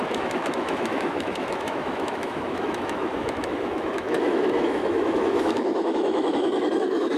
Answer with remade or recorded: remade